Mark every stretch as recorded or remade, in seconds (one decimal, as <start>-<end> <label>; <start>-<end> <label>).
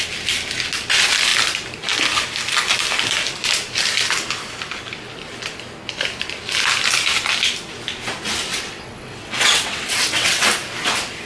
0.0-8.5 recorded; 8.5-10.4 remade; 10.4-11.3 recorded